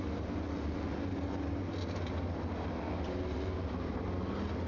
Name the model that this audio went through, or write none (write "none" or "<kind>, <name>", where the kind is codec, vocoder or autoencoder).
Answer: none